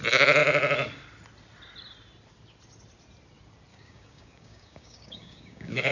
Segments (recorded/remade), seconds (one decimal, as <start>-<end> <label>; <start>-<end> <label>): 0.0-3.7 recorded; 3.7-5.9 remade